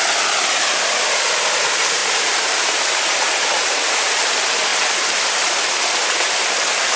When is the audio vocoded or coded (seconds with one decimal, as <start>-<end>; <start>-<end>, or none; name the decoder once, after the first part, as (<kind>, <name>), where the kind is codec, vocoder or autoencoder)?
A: 2.0-4.1 (vocoder, BigVGAN v2); 4.7-5.3